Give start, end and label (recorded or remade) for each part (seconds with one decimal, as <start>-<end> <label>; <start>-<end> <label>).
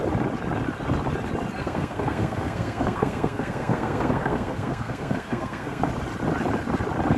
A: 0.0-1.6 recorded; 1.6-5.9 remade; 5.9-7.2 recorded